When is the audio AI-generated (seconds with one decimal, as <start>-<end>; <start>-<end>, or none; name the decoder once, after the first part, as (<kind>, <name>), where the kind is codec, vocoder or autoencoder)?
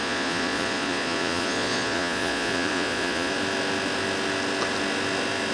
0.0-3.3 (vocoder, Vocos)